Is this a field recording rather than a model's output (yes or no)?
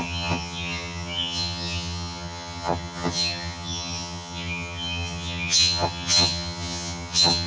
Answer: no